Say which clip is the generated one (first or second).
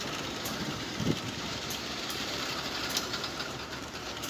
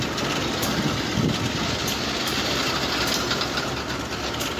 first